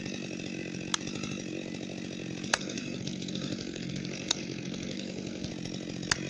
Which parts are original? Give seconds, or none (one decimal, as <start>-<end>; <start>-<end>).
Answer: 0.0-2.5; 5.5-6.3